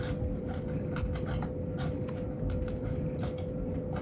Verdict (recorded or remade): recorded